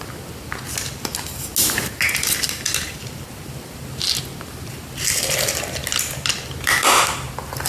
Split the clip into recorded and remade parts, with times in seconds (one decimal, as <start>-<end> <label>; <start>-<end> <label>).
0.0-7.7 recorded